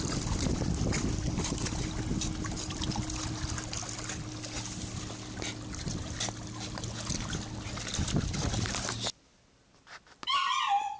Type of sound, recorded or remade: recorded